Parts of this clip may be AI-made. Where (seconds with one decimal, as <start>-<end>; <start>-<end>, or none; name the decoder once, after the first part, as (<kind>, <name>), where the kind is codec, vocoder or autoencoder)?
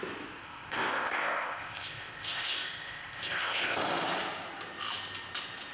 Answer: 0.4-3.8 (codec, ZipCodec)